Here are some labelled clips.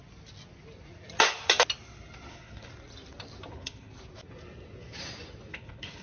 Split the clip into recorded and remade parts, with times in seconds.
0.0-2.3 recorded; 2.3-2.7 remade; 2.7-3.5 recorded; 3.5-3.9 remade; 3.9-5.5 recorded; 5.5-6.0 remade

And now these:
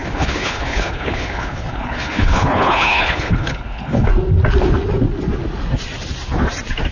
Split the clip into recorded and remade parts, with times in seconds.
0.0-4.1 remade; 4.1-6.9 recorded

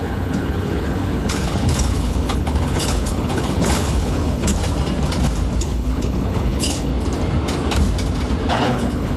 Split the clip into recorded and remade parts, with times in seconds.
0.0-4.5 remade; 4.5-5.6 recorded; 5.6-6.9 remade; 6.9-8.5 recorded; 8.5-9.2 remade

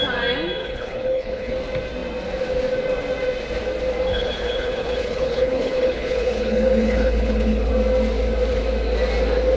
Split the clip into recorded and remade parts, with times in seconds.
0.0-0.6 recorded; 0.6-1.5 remade; 1.5-4.1 recorded; 4.1-7.7 remade; 7.7-9.6 recorded

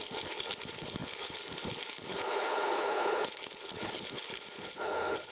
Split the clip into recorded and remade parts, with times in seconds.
0.0-5.3 remade

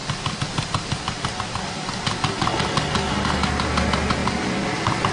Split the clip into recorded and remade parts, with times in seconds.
0.0-5.1 recorded

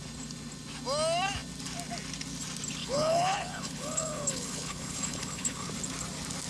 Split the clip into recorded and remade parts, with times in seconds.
0.0-2.8 recorded; 2.8-5.7 remade; 5.7-6.5 recorded

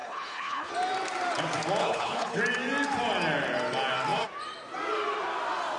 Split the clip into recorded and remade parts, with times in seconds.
0.0-0.7 remade; 0.7-1.8 recorded; 1.8-2.4 remade; 2.4-5.8 recorded